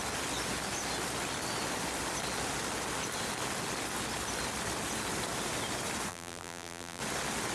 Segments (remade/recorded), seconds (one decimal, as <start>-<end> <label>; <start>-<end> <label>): 0.0-6.1 recorded; 6.1-7.0 remade; 7.0-7.5 recorded